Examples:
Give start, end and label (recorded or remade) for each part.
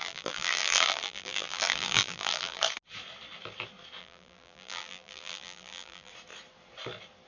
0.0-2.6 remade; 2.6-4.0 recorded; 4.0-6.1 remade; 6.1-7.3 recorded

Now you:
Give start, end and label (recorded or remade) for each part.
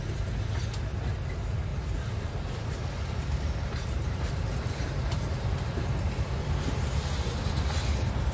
0.0-1.7 recorded; 1.7-6.0 remade; 6.0-8.3 recorded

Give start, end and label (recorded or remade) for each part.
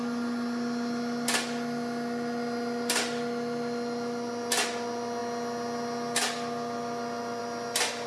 0.0-8.1 recorded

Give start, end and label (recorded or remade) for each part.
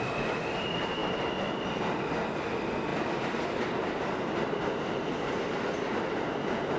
0.0-2.9 recorded; 2.9-5.9 remade; 5.9-6.8 recorded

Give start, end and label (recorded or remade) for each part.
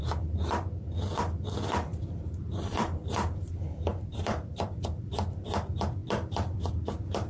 0.0-1.9 recorded; 1.9-3.5 remade; 3.5-3.9 recorded; 3.9-5.6 remade; 5.6-7.3 recorded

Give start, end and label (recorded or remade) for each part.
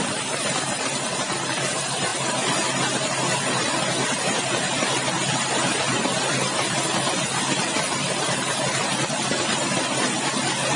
0.0-10.8 recorded